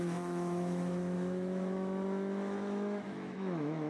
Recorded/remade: remade